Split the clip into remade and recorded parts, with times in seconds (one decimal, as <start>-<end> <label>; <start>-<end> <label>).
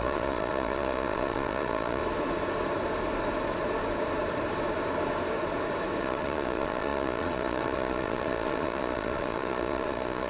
0.0-2.0 remade; 2.0-6.0 recorded; 6.0-10.3 remade